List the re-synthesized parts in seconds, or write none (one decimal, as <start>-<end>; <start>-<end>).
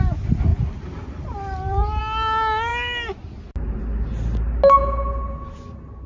0.5-2.0